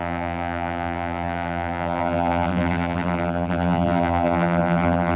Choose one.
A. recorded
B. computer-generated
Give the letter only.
B